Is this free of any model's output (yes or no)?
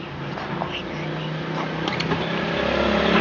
yes